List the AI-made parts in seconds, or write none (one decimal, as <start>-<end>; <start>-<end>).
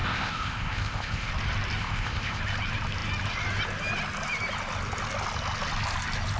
0.0-1.3; 1.8-2.4